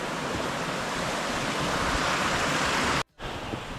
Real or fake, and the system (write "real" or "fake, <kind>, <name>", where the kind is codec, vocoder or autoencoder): real